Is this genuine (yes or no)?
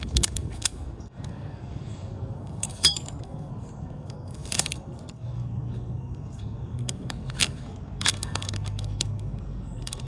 no